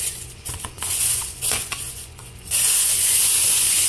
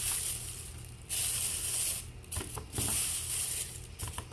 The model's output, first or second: first